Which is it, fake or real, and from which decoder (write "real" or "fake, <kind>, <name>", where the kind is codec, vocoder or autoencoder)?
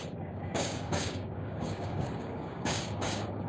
fake, codec, DAC